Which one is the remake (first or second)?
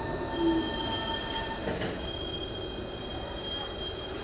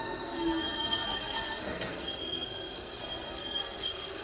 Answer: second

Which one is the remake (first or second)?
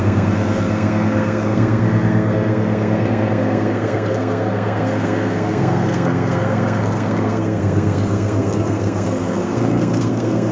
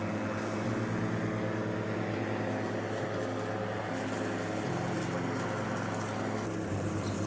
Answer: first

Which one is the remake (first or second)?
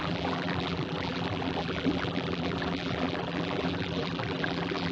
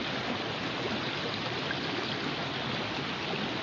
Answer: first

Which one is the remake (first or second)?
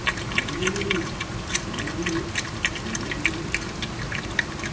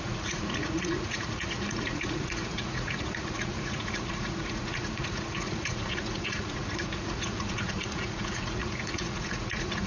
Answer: second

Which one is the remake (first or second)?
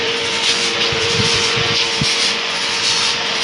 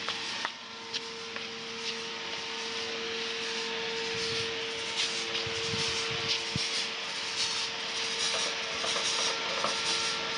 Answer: first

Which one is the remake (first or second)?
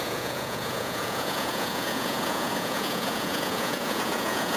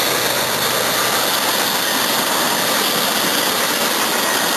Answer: first